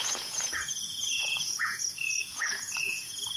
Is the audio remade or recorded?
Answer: remade